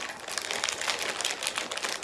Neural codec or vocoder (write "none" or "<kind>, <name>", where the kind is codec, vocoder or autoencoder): none